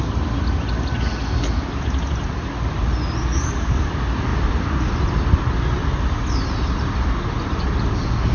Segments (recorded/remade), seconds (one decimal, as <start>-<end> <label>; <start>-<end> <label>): 0.0-3.3 recorded; 3.3-3.9 remade; 3.9-8.3 recorded

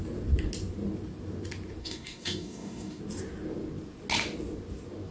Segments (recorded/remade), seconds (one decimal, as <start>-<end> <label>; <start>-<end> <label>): 0.0-1.8 recorded; 1.8-3.0 remade; 3.0-5.1 recorded

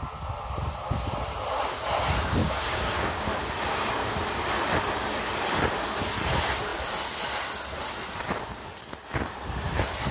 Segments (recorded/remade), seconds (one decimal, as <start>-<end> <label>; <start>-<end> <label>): 0.0-2.4 recorded; 2.4-3.2 remade; 3.2-10.1 recorded

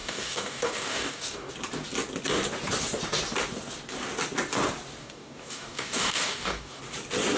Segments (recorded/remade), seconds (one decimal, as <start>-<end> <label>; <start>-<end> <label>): 0.0-1.5 remade; 1.5-5.0 recorded; 5.0-6.8 remade; 6.8-7.4 recorded

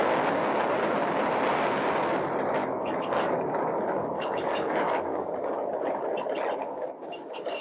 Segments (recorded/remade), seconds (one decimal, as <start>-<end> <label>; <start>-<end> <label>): 0.0-2.6 recorded; 2.6-5.5 remade; 5.5-6.6 recorded; 6.6-7.6 remade

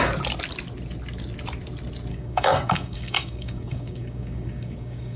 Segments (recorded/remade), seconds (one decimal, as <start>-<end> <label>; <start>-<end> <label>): 0.0-2.1 recorded; 2.1-5.2 remade

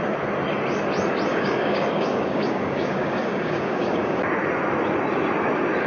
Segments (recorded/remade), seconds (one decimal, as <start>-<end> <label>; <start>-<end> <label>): 0.0-1.3 recorded; 1.3-4.2 remade; 4.2-5.9 recorded

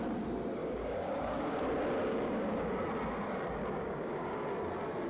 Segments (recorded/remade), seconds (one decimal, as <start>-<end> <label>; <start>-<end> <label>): 0.0-0.6 recorded; 0.6-1.6 remade; 1.6-2.1 recorded; 2.1-2.8 remade; 2.8-3.6 recorded; 3.6-4.5 remade; 4.5-5.1 recorded